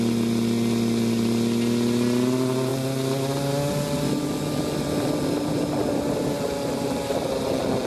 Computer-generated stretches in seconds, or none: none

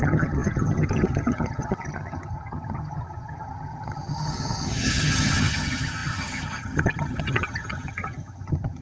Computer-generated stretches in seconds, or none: 0.0-8.8 (vocoder, HiFi-GAN)